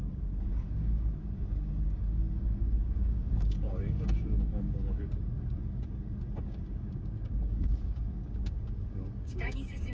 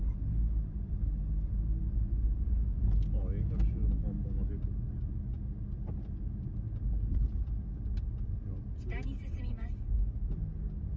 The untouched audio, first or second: second